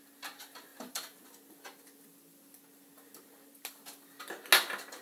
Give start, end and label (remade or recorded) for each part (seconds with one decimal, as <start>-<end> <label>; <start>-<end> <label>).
0.0-5.0 recorded